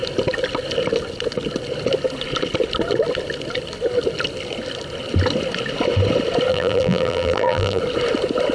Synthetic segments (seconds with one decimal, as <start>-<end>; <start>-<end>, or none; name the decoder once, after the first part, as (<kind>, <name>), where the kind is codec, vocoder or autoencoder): 6.5-7.8 (vocoder, BigVGAN v2)